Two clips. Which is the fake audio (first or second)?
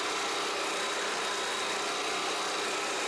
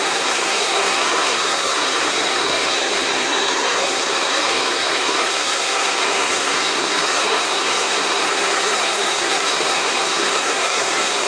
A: second